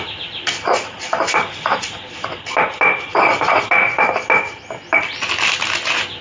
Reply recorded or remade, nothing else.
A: recorded